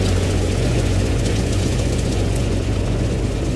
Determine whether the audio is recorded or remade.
remade